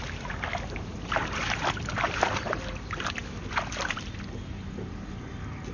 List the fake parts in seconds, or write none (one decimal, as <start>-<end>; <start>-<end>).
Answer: 0.0-5.7